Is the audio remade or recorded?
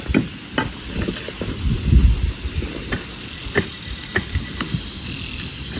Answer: recorded